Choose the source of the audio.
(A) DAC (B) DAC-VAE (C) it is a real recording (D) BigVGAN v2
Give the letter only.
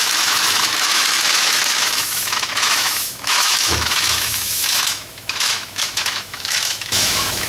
B